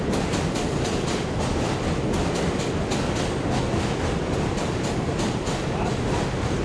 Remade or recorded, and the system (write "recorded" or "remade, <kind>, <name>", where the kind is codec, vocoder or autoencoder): recorded